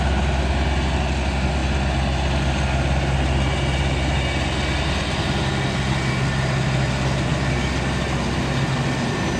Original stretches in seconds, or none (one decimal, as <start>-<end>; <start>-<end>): 0.0-9.4